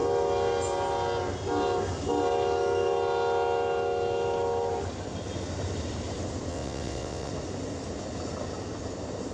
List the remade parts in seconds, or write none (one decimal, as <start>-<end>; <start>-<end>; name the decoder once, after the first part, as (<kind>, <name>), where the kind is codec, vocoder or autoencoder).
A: 6.5-7.3 (vocoder, WaveNeXt)